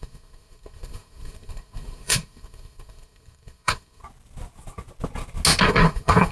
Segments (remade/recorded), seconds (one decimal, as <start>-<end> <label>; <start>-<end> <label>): 0.0-4.0 remade; 4.0-5.6 recorded; 5.6-6.3 remade